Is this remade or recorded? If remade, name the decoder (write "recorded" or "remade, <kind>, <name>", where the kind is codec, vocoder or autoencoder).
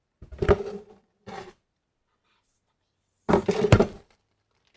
remade, vocoder, BigVGAN v2